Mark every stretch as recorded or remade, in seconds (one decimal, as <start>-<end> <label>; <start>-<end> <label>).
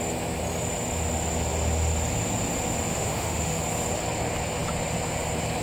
0.0-2.9 recorded; 2.9-3.6 remade; 3.6-5.6 recorded